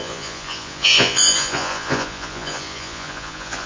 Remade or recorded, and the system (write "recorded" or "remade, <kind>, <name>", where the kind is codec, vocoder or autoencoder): remade, vocoder, Vocos